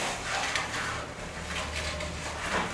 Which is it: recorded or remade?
recorded